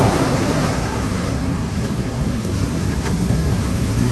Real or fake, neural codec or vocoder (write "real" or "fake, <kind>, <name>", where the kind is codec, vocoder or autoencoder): fake, codec, SNAC